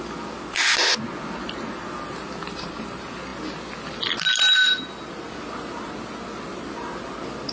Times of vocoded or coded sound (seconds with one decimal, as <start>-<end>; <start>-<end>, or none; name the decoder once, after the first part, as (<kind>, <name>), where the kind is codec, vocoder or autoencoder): none